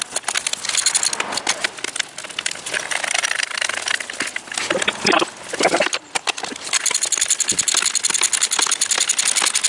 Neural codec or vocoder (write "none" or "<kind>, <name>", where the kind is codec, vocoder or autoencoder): none